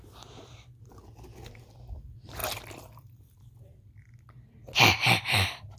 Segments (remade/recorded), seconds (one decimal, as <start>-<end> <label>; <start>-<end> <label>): 0.0-5.8 recorded